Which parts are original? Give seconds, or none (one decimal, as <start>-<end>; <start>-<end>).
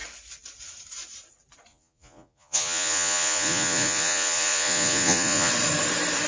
0.0-1.7; 5.5-6.3